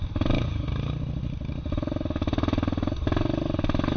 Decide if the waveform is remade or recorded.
recorded